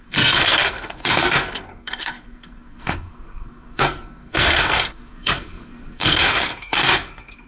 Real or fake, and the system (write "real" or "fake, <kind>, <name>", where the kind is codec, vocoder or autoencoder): fake, codec, SNAC